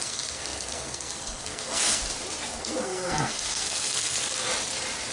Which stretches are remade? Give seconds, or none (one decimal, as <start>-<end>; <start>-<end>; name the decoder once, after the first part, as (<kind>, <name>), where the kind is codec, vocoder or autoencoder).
0.0-2.0 (codec, SNAC); 2.6-4.5